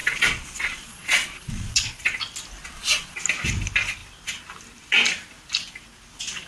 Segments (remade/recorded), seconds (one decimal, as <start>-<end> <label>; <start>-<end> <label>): 0.0-2.2 remade; 2.2-2.6 recorded; 2.6-3.2 remade; 3.2-6.5 recorded